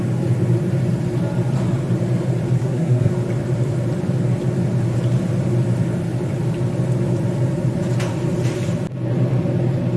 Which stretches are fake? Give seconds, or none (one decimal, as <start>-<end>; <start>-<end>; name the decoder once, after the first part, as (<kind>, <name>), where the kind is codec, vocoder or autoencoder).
2.6-3.1 (codec, SNAC)